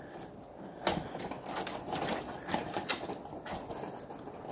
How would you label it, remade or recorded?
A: recorded